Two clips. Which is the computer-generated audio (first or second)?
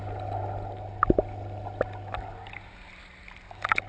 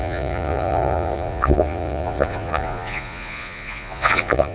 second